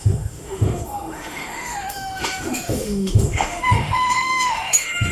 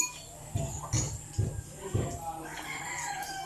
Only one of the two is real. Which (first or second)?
second